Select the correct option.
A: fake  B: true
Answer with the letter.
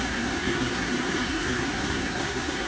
A